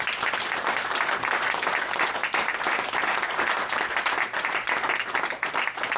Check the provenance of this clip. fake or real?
real